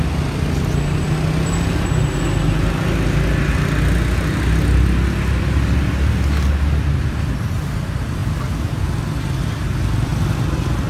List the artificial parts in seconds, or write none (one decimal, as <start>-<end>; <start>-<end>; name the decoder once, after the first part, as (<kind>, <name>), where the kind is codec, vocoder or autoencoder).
none